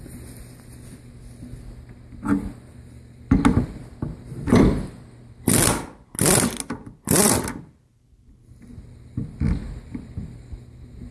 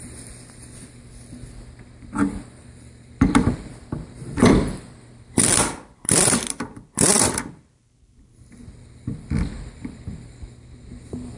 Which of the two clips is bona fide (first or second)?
first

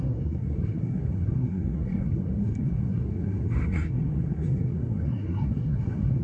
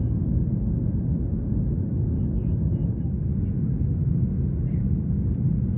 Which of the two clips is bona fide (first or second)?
second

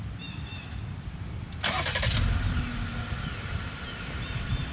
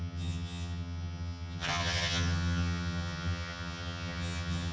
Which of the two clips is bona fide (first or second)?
first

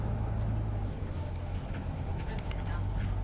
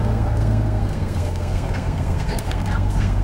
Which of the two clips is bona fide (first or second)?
first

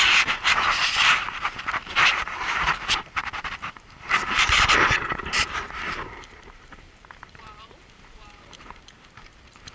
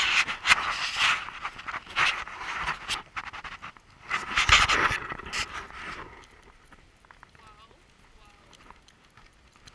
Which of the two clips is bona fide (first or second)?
second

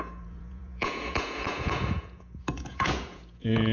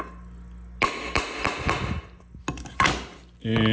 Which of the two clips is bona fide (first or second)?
second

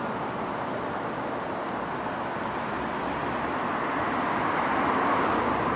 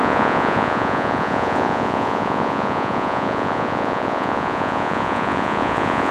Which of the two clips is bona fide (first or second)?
first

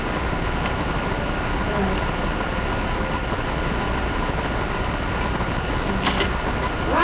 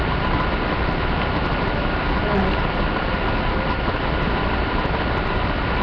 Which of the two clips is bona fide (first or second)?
first